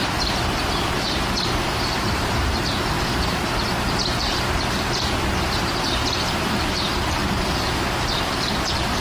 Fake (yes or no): yes